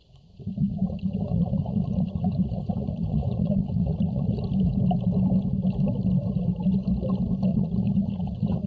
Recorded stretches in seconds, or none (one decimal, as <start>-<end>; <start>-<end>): 4.4-7.5